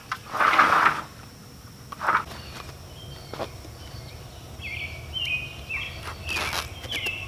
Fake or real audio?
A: real